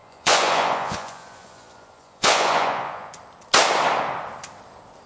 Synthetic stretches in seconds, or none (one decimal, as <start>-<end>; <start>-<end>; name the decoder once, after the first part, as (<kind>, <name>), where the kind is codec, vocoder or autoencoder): 0.0-3.1 (vocoder, Vocos)